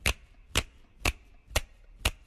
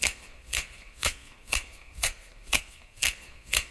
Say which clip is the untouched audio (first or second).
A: first